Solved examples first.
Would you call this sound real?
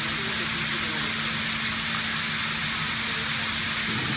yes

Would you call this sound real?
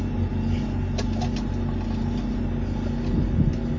yes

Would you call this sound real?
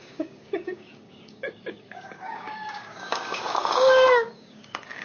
no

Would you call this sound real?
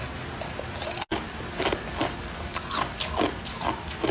yes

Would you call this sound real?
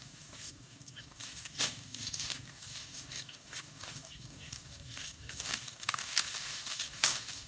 no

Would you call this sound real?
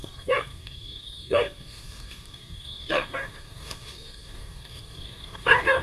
no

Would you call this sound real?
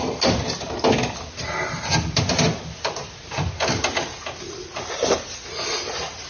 yes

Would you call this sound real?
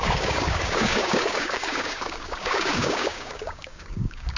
no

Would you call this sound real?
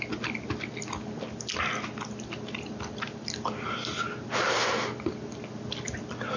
yes